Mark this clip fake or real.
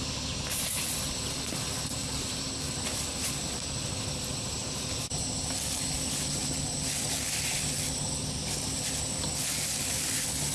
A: real